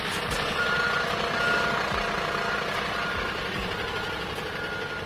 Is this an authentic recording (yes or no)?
yes